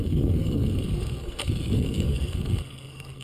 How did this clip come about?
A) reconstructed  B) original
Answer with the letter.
A